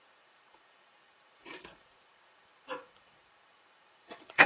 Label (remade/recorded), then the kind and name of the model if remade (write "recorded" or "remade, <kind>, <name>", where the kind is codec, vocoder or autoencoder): remade, vocoder, Vocos